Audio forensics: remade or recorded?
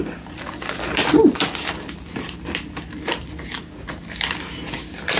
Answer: recorded